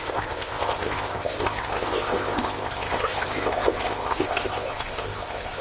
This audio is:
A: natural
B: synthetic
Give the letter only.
B